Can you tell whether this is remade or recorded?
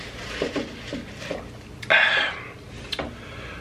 recorded